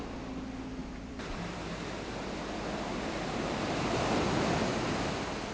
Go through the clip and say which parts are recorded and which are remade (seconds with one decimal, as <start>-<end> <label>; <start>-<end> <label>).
0.0-0.8 recorded; 0.8-4.1 remade; 4.1-5.5 recorded

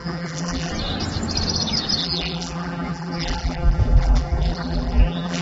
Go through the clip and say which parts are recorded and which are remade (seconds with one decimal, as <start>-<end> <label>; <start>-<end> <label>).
0.0-0.7 remade; 0.7-2.0 recorded; 2.0-5.4 remade

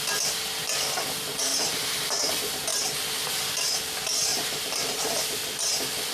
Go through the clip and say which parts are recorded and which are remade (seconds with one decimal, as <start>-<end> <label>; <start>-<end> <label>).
0.0-1.5 recorded; 1.5-2.3 remade; 2.3-4.3 recorded; 4.3-5.2 remade; 5.2-6.1 recorded

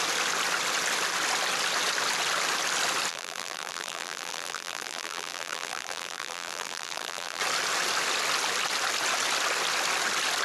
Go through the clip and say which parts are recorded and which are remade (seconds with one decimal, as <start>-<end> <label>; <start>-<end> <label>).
0.0-3.1 recorded; 3.1-7.4 remade; 7.4-10.4 recorded

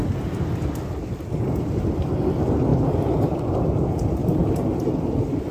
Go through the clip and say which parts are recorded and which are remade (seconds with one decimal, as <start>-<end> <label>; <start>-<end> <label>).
0.0-2.7 recorded; 2.7-3.3 remade; 3.3-4.2 recorded; 4.2-5.5 remade

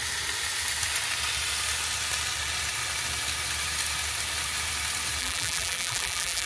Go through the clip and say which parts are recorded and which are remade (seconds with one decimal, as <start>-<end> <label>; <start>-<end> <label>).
0.0-5.2 recorded; 5.2-6.5 remade

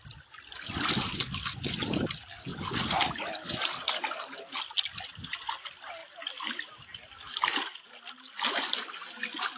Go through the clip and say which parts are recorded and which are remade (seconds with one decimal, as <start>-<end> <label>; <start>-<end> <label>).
0.0-9.6 recorded

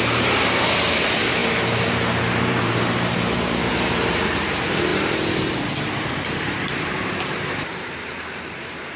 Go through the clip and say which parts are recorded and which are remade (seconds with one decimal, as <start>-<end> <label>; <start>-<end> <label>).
0.0-9.0 remade